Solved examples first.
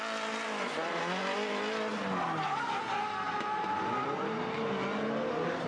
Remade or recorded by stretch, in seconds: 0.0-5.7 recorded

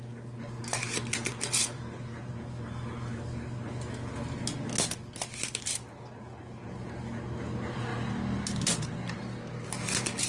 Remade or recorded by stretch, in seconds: 0.0-10.3 recorded

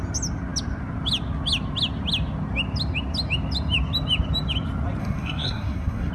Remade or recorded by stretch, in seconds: 0.0-5.0 recorded; 5.0-6.1 remade